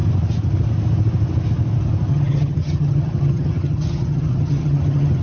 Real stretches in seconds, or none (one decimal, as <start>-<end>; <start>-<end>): 0.0-2.1